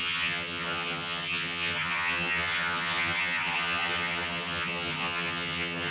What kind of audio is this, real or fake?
fake